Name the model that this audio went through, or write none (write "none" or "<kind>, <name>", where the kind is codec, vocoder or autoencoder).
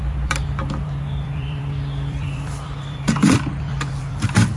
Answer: vocoder, BigVGAN v2